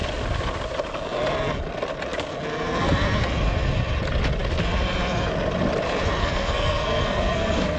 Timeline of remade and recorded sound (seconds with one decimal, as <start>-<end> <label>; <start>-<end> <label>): 0.0-6.2 recorded; 6.2-7.8 remade